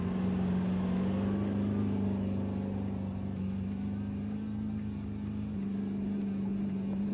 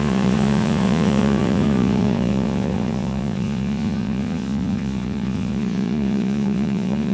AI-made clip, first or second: second